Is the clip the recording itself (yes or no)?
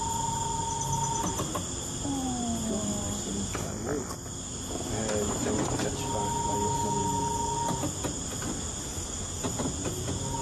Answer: yes